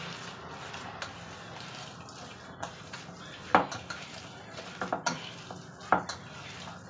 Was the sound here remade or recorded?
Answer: recorded